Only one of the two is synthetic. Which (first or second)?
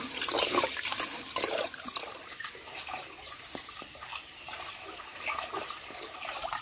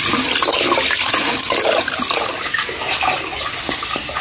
first